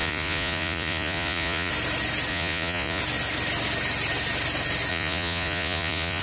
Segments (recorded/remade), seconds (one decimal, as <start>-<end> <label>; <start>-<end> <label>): 0.0-1.7 remade; 1.7-2.3 recorded; 2.3-3.0 remade; 3.0-4.9 recorded; 4.9-6.2 remade